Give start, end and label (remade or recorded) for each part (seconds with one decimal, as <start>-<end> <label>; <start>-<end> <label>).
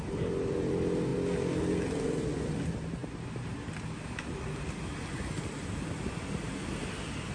0.0-7.3 recorded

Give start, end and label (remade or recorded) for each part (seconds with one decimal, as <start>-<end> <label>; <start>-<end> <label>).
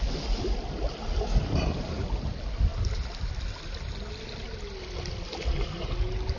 0.0-6.4 recorded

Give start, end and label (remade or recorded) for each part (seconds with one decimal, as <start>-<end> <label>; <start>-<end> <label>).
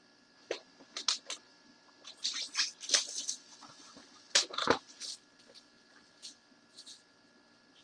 0.0-7.8 recorded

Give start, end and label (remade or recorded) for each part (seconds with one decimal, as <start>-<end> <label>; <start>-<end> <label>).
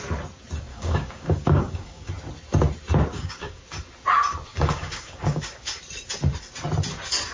0.0-0.7 recorded; 0.7-2.1 remade; 2.1-3.1 recorded; 3.1-3.6 remade; 3.6-4.5 recorded; 4.5-5.7 remade; 5.7-7.3 recorded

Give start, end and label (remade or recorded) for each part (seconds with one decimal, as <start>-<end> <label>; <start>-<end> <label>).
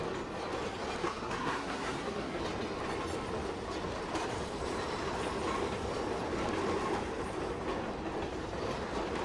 0.0-1.0 recorded; 1.0-2.4 remade; 2.4-9.2 recorded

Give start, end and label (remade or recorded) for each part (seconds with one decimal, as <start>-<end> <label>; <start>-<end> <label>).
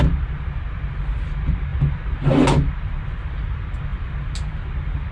0.0-5.1 recorded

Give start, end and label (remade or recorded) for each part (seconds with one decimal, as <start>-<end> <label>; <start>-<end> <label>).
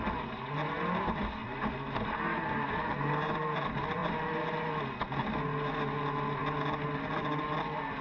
0.0-1.4 recorded; 1.4-2.2 remade; 2.2-8.0 recorded